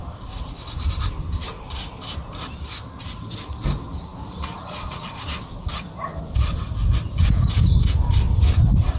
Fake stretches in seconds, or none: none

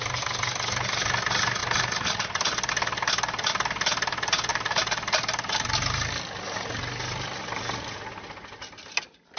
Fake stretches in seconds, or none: 4.5-5.7 (vocoder, BigVGAN v2)

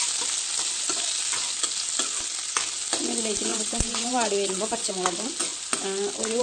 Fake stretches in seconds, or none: 3.5-4.9 (vocoder, WaveNeXt)

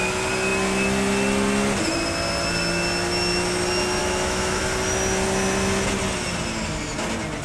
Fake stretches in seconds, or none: 4.0-4.6 (autoencoder, DAC-VAE)